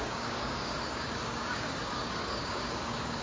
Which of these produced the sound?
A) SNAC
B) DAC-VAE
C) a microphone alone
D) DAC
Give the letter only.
D